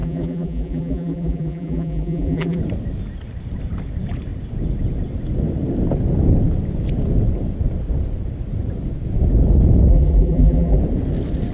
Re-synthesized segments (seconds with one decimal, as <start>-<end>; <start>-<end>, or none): 0.0-2.6; 9.9-10.8